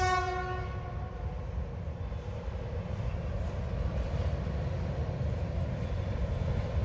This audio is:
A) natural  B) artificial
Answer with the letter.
A